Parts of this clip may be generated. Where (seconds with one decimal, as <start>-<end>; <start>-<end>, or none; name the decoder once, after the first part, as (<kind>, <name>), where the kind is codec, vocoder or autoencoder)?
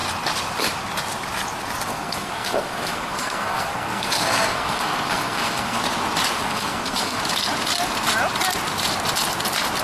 1.9-5.8 (codec, SNAC); 6.4-7.2